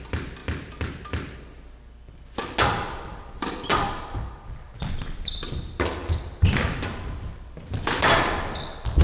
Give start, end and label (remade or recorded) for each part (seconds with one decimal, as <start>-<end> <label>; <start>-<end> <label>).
0.0-9.0 recorded